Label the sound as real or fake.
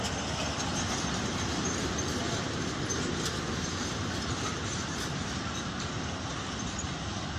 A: real